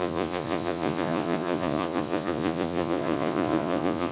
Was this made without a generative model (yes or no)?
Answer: no